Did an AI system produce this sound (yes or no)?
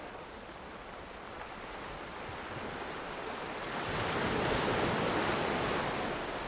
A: no